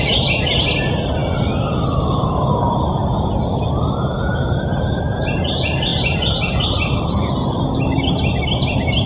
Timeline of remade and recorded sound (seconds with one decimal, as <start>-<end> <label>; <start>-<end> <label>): 0.0-9.1 recorded